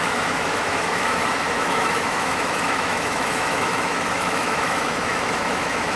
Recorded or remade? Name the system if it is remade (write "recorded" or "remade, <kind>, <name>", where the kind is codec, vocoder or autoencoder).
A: remade, autoencoder, DAC-VAE